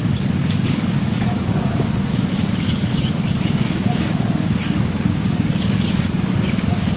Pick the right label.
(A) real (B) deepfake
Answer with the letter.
B